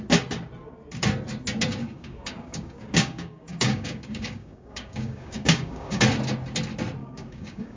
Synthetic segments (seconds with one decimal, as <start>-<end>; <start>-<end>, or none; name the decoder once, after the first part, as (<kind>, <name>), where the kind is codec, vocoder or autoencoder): 1.8-6.0 (codec, DAC); 7.0-7.8